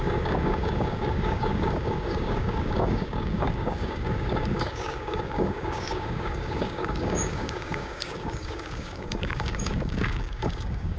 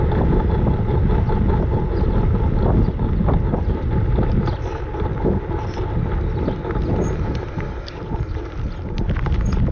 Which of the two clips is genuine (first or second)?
second